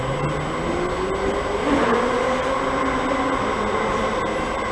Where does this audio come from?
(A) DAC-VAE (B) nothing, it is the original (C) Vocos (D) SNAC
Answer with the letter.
B